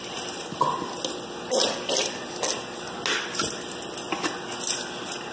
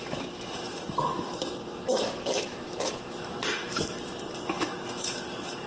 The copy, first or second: second